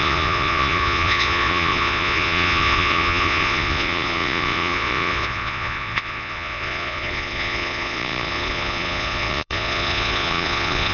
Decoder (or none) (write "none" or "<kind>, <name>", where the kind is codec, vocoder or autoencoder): vocoder, Vocos